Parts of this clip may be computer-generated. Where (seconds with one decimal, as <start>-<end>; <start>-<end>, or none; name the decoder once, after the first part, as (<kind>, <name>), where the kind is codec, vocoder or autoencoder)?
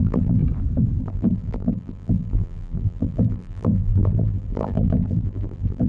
0.0-0.4 (vocoder, BigVGAN v2); 1.0-5.9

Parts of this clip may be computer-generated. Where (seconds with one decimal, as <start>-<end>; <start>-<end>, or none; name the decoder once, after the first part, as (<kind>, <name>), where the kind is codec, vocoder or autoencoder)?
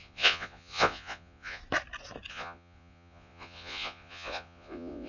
0.0-1.6 (vocoder, Vocos); 2.3-5.1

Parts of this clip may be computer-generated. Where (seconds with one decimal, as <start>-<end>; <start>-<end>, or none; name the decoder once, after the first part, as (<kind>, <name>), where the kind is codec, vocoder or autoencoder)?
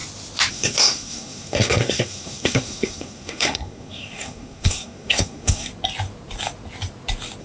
0.5-5.7 (codec, SNAC)